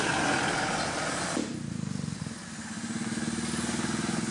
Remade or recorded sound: recorded